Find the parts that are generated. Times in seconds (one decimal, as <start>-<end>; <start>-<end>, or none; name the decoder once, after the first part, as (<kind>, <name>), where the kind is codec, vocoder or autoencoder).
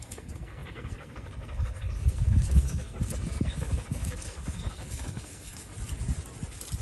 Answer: 0.0-5.7 (codec, SNAC)